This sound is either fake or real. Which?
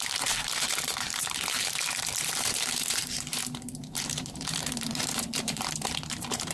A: fake